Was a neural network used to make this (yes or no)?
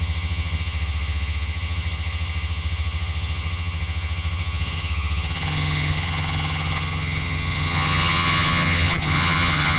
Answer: yes